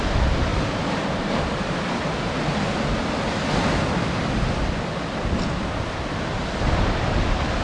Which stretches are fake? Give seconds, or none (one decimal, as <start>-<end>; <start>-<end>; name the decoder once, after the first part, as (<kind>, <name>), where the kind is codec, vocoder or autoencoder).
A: 0.5-1.3 (vocoder, BigVGAN v2)